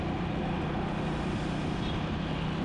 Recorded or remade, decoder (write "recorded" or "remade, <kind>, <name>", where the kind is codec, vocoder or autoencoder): recorded